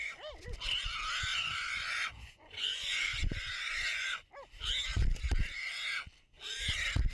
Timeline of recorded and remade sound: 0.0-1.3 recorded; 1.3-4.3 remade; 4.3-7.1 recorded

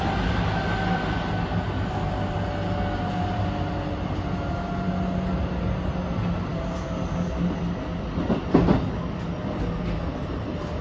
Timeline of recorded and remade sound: 0.0-10.8 recorded